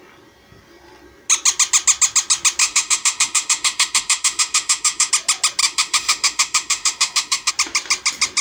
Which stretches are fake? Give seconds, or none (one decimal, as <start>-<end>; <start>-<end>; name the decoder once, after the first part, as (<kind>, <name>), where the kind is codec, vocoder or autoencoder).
2.6-5.1 (autoencoder, DAC-VAE); 5.6-7.5